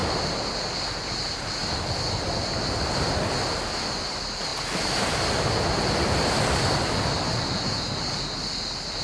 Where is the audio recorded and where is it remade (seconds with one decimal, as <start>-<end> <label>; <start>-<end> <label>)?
0.0-9.0 recorded